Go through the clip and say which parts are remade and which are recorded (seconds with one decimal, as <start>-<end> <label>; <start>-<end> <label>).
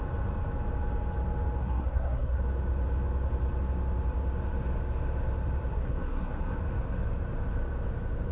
0.0-1.6 recorded; 1.6-2.4 remade; 2.4-5.7 recorded; 5.7-6.6 remade; 6.6-8.3 recorded